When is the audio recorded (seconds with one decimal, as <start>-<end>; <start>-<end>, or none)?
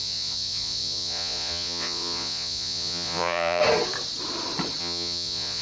3.6-4.8